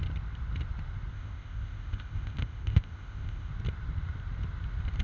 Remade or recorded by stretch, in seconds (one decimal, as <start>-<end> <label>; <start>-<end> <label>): 0.0-1.1 recorded; 1.1-3.5 remade; 3.5-5.0 recorded